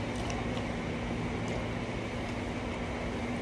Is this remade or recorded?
recorded